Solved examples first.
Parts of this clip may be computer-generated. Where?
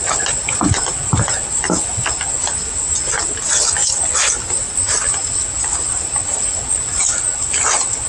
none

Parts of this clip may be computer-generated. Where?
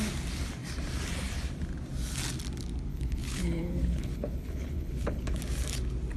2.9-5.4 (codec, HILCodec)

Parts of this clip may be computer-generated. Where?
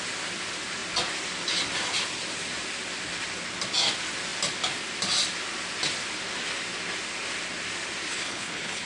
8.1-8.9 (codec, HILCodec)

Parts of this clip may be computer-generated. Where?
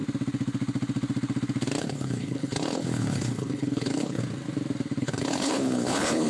1.8-4.2 (codec, HILCodec); 5.0-6.3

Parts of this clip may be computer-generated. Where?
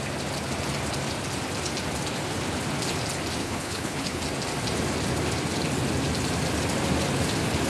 3.4-4.2 (codec, HILCodec)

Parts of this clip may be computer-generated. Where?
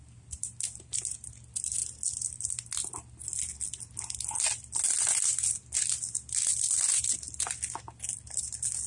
none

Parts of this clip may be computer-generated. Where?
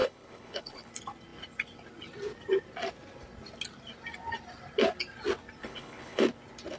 0.0-0.9 (codec, HILCodec); 5.6-6.2